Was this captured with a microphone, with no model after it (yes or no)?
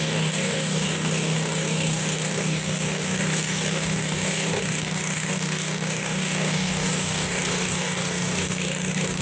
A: no